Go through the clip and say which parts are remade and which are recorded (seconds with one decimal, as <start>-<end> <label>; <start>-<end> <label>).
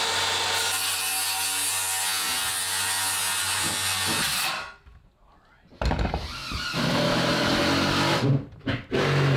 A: 0.0-9.4 recorded